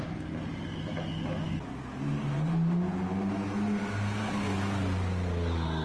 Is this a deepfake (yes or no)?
no